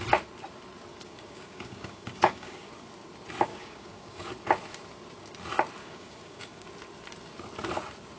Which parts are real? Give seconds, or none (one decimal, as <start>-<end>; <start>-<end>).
0.0-0.9; 2.7-3.5; 4.3-5.8; 6.7-8.2